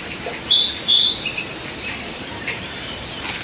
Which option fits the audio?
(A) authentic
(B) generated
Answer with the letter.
B